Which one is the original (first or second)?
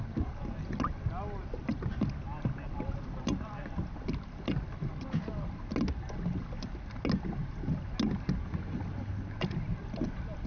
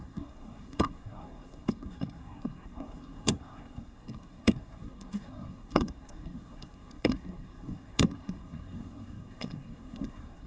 first